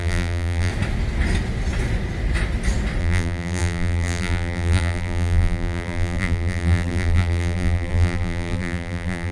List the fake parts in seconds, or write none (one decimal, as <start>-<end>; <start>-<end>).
0.0-0.7; 3.0-9.3